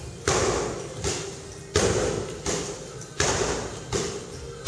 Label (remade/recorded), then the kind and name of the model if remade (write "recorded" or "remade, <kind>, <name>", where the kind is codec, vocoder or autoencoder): recorded